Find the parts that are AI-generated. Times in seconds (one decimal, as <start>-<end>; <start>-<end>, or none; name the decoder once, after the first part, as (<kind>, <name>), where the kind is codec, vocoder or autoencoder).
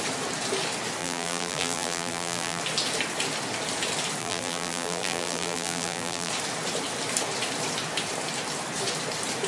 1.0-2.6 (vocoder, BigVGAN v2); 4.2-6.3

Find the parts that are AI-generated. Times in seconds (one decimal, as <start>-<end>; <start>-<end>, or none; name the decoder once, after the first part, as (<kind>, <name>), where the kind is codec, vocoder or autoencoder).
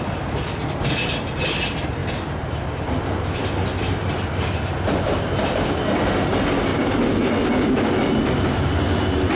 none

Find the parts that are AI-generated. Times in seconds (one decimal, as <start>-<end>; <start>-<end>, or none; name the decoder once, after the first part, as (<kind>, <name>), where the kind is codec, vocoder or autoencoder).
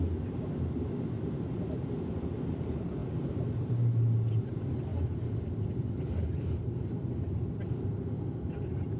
3.0-3.7 (vocoder, BigVGAN v2); 4.9-8.4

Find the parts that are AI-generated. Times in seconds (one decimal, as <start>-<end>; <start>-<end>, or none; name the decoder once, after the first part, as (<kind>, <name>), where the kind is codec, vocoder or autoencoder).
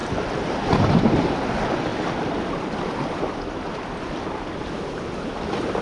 1.9-3.7 (vocoder, BigVGAN v2)